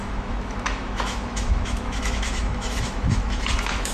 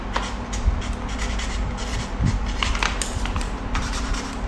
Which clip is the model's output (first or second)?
first